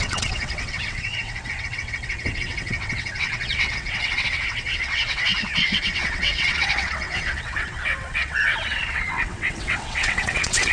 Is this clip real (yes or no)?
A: no